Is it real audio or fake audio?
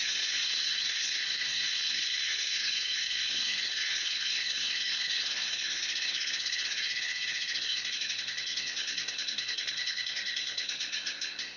fake